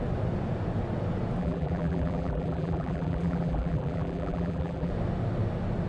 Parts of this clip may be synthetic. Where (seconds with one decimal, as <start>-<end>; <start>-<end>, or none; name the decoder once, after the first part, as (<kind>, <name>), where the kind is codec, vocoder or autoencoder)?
1.4-4.9 (vocoder, BigVGAN v2)